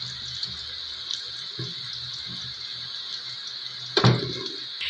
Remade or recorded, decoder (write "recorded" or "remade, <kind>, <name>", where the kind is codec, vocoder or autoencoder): recorded